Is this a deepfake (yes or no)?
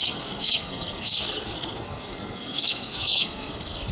yes